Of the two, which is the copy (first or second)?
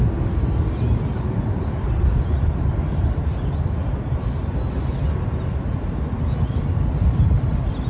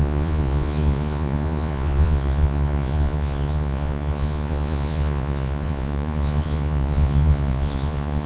second